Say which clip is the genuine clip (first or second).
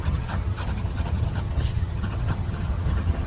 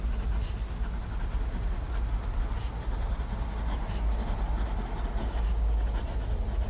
second